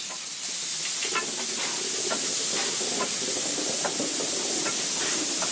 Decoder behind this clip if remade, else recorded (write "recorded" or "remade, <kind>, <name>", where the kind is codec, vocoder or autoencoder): recorded